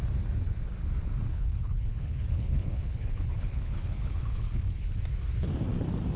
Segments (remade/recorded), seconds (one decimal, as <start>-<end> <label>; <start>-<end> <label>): 0.0-1.3 recorded; 1.3-5.0 remade; 5.0-6.2 recorded